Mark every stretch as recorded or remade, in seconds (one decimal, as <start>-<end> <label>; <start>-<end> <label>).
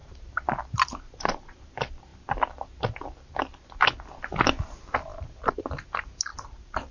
0.0-1.7 remade; 1.7-5.1 recorded; 5.1-5.7 remade; 5.7-6.3 recorded; 6.3-6.9 remade